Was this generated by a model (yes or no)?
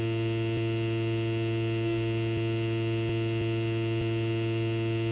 no